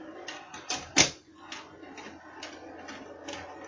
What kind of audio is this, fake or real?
real